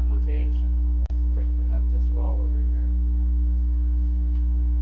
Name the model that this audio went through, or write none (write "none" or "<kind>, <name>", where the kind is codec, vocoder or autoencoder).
codec, SNAC